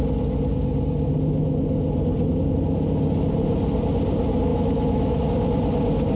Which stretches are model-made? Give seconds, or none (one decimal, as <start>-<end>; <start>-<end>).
4.5-5.2